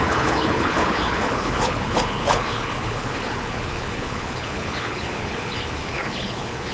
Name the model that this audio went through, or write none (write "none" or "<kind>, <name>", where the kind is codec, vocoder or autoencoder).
codec, HILCodec